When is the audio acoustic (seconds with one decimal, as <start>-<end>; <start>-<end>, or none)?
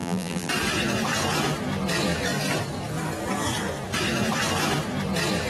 0.5-5.5